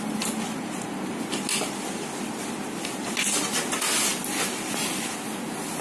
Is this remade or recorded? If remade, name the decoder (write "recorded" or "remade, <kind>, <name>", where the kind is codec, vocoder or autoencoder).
recorded